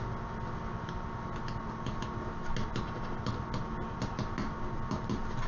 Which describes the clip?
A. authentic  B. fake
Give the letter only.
A